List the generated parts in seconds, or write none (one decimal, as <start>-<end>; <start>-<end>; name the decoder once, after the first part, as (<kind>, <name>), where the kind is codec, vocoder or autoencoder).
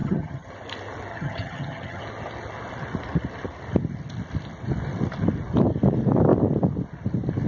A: 0.0-0.5 (vocoder, HiFi-GAN); 1.1-2.0